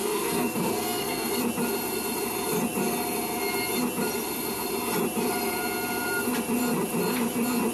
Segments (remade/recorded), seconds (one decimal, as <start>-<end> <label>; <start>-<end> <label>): 0.0-1.3 remade; 1.3-7.7 recorded